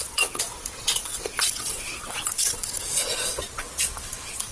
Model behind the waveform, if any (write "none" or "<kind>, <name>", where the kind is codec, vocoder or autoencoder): vocoder, Vocos